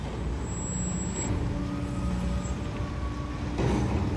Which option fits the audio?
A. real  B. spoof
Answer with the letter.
A